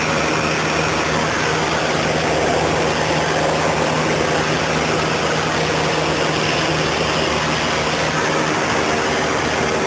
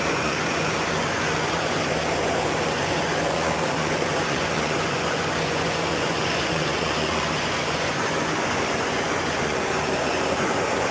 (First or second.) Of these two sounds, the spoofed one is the second